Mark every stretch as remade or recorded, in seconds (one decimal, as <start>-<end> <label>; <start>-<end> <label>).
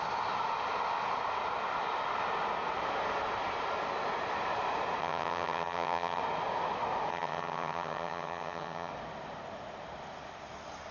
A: 0.0-5.0 recorded; 5.0-6.2 remade; 6.2-7.1 recorded; 7.1-8.9 remade; 8.9-10.9 recorded